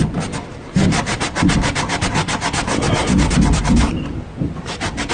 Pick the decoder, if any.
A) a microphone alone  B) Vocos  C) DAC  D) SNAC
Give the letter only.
A